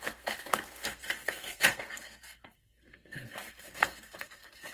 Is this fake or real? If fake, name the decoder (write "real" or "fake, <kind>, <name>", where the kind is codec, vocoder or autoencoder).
fake, codec, SNAC